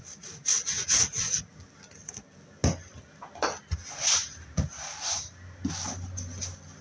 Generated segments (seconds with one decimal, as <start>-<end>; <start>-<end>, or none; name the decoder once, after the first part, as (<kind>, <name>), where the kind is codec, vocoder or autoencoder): 0.5-1.6 (vocoder, Vocos)